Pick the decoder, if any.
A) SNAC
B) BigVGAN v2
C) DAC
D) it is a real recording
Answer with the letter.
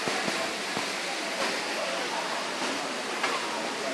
D